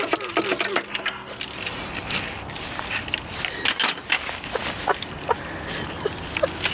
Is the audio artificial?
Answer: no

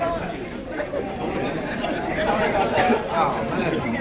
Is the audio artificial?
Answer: yes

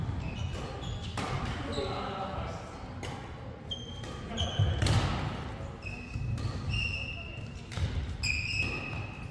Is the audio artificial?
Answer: no